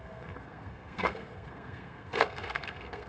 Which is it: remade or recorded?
remade